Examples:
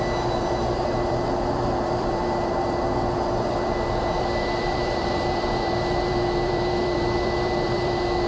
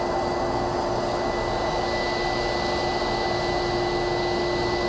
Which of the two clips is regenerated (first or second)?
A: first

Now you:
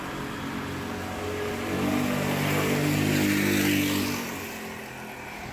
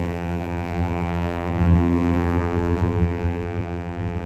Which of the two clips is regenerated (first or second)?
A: second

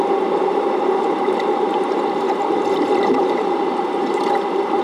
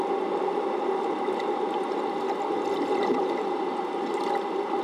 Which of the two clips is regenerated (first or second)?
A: first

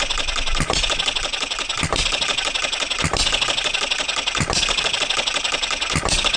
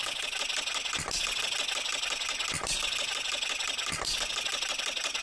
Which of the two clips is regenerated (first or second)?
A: first